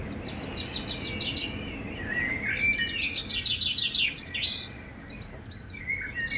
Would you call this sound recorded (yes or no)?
yes